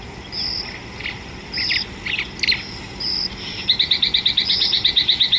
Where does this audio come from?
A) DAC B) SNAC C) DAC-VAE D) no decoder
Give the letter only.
D